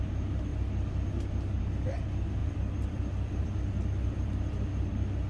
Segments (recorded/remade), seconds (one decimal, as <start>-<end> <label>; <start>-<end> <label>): 0.0-2.4 recorded; 2.4-4.3 remade; 4.3-5.3 recorded